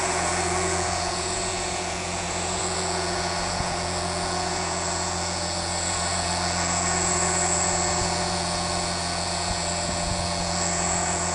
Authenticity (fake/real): fake